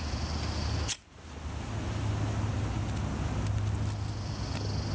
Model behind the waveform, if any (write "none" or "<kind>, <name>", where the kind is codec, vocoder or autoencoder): none